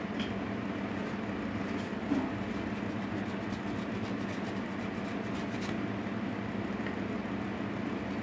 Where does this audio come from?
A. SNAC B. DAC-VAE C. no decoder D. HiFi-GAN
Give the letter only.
C